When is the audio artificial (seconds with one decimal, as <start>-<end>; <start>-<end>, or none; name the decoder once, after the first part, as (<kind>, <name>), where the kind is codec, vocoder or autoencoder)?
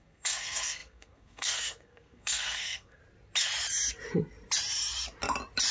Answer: 0.0-3.0 (codec, SNAC)